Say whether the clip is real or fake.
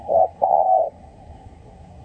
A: fake